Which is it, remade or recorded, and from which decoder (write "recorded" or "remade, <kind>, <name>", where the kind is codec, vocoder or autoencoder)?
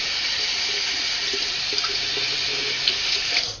remade, vocoder, BigVGAN v2